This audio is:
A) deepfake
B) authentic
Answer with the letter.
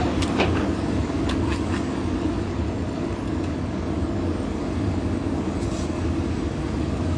A